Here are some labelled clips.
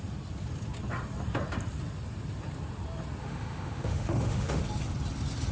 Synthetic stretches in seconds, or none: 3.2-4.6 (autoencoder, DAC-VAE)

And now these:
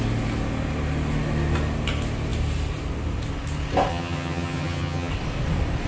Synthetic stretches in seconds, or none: 3.9-5.1 (vocoder, HiFi-GAN)

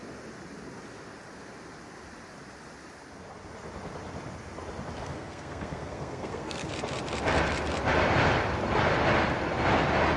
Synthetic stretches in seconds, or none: 5.0-6.7 (codec, SNAC)

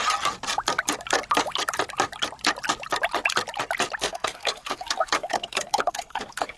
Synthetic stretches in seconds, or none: 4.0-6.6 (codec, SNAC)

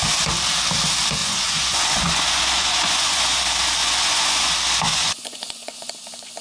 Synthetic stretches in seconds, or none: 1.2-3.4 (vocoder, Vocos); 3.8-4.5; 4.9-5.9

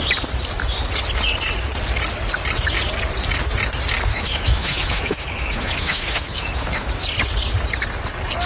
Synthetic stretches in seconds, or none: 4.1-6.9 (autoencoder, DAC-VAE)

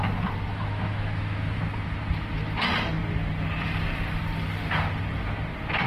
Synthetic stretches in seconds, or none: 0.5-1.6 (autoencoder, DAC-VAE)

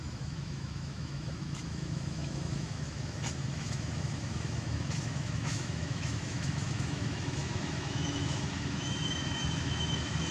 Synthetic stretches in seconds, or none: 0.0-10.3 (autoencoder, DAC-VAE)